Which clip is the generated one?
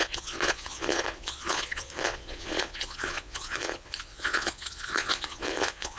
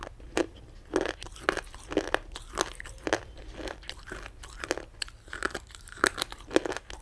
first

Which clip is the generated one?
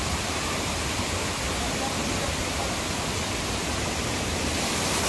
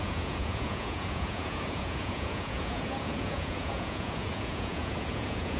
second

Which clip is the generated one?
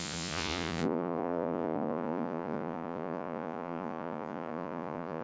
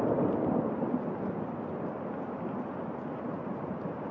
first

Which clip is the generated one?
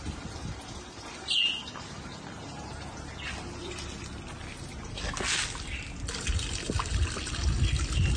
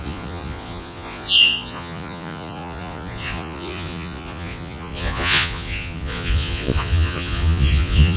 second